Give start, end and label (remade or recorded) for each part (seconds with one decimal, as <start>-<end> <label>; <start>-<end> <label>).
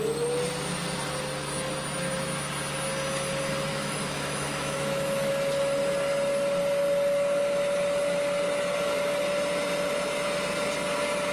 0.0-3.7 recorded; 3.7-5.3 remade; 5.3-11.3 recorded